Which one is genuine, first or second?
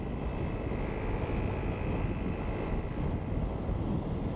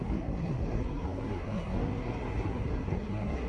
first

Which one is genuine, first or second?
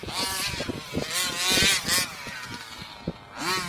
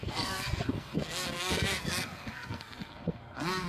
first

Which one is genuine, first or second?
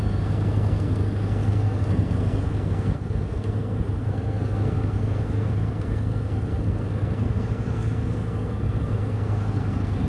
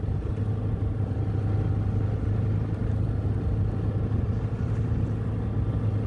second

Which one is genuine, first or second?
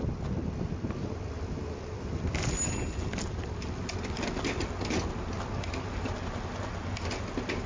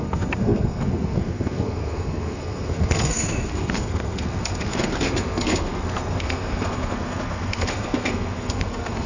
first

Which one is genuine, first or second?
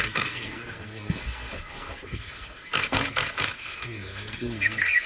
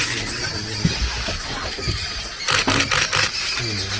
second